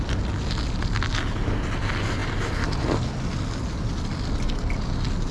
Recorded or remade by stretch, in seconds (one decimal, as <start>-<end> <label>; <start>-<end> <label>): 0.0-5.3 recorded